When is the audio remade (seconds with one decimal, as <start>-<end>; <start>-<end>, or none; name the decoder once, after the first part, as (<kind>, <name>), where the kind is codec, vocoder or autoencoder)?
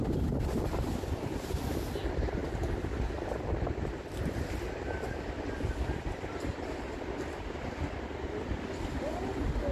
none